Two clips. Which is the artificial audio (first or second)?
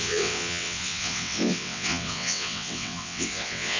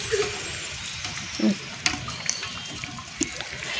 first